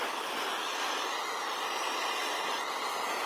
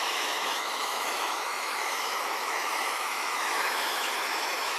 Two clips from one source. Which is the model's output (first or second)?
second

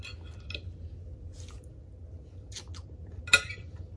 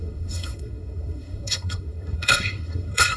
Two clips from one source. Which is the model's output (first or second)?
second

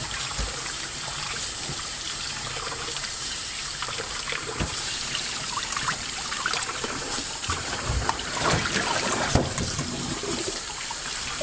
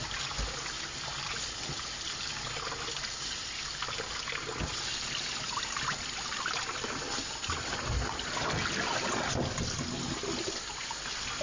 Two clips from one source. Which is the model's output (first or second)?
first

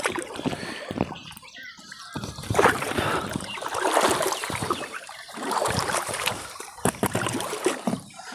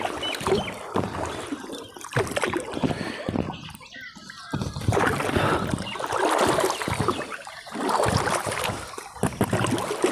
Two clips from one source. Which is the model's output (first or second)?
first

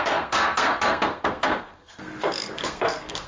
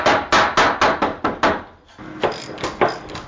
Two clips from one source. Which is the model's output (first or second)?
first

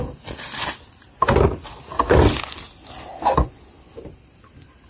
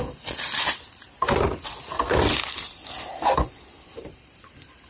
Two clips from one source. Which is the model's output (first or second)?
second